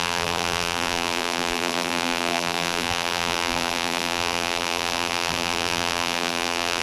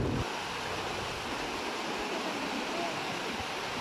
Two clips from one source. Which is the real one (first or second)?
second